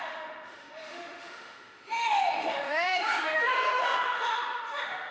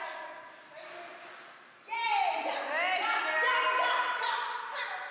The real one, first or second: second